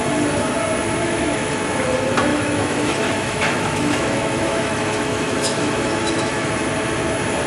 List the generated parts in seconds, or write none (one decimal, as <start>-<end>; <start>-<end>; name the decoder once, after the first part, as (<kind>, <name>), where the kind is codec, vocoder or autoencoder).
1.0-1.6 (autoencoder, DAC-VAE); 2.3-6.5